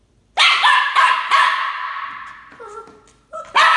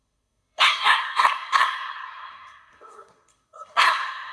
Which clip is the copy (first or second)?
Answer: second